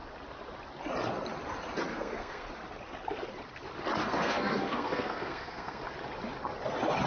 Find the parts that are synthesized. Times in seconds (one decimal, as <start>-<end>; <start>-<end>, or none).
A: 1.9-2.5; 4.0-5.8